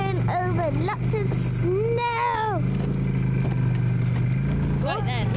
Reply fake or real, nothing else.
real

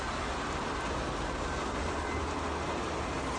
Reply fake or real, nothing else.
real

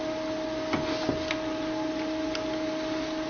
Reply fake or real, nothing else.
real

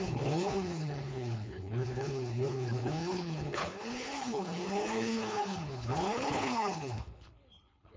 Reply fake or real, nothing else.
fake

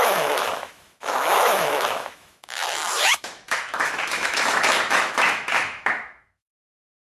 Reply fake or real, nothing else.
fake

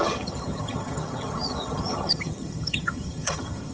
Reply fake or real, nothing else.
fake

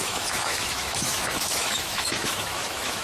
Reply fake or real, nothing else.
fake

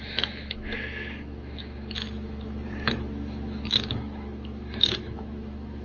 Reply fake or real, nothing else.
fake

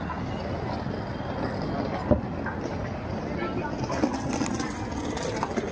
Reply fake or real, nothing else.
real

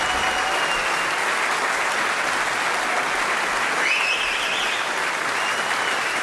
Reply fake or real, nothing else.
real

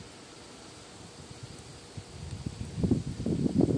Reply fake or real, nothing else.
real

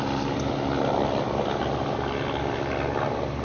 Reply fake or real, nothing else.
real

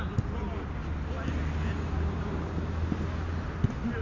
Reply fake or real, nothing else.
real